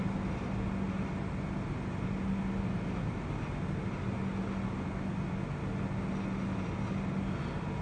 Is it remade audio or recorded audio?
recorded